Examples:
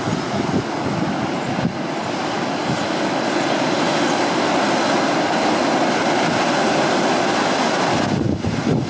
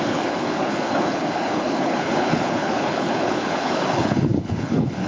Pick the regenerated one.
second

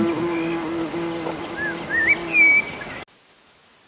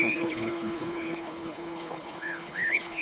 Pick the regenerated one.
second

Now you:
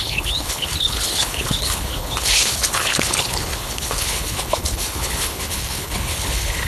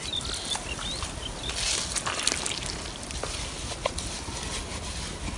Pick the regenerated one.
first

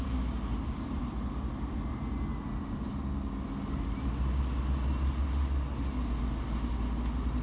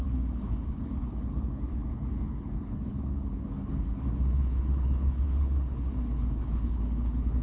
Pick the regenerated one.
second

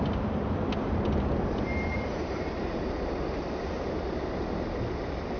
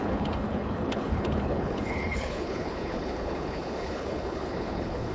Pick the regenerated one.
second